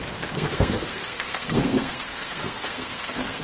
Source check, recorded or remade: remade